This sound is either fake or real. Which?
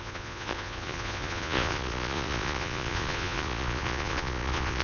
fake